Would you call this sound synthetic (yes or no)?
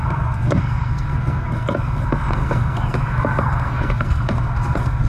yes